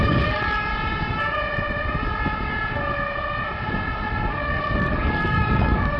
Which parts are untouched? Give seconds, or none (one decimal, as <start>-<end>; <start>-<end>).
0.7-4.3